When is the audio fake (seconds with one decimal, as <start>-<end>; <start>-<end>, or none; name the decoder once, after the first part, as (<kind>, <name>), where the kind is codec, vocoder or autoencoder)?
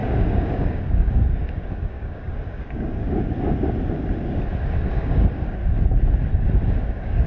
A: 0.0-3.0 (codec, DAC); 4.9-5.6; 6.8-7.3